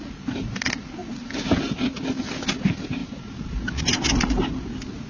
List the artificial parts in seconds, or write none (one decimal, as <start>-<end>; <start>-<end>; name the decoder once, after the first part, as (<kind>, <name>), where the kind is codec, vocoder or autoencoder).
none